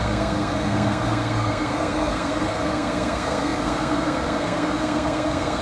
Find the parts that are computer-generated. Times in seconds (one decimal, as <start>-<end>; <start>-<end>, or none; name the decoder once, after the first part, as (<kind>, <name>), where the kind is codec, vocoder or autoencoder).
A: 0.0-5.6 (codec, SNAC)